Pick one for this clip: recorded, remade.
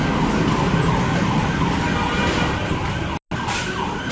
recorded